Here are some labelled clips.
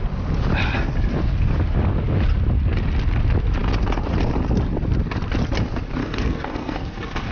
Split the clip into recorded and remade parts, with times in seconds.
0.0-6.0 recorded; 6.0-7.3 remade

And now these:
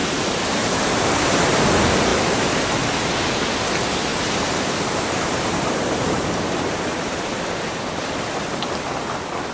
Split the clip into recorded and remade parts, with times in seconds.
0.0-1.4 remade; 1.4-4.1 recorded; 4.1-7.8 remade; 7.8-9.5 recorded

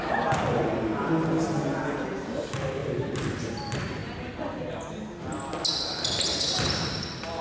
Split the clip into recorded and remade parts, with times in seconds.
0.0-2.8 recorded; 2.8-3.5 remade; 3.5-7.4 recorded

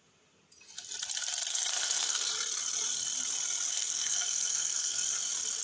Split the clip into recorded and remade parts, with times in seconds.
0.0-1.5 recorded; 1.5-2.3 remade; 2.3-3.7 recorded; 3.7-5.0 remade; 5.0-5.6 recorded

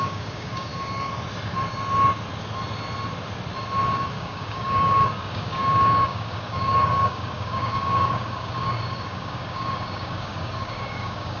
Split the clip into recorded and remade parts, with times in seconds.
0.0-0.7 remade; 0.7-4.1 recorded; 4.1-11.4 remade

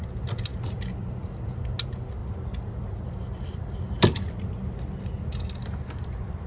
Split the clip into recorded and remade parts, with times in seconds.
0.0-2.2 recorded; 2.2-5.3 remade; 5.3-6.5 recorded

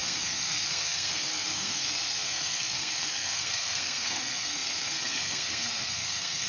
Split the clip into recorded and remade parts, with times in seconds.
0.0-6.5 remade